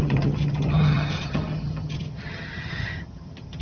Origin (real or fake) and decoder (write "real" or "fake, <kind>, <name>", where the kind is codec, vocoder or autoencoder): fake, vocoder, HiFi-GAN